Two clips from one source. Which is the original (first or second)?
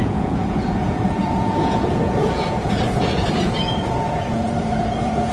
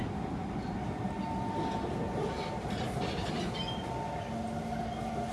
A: second